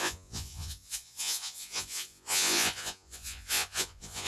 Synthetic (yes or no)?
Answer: yes